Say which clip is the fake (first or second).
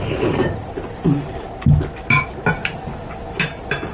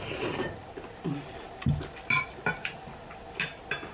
second